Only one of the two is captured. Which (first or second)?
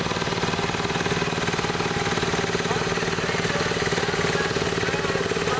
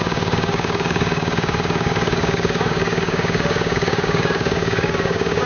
first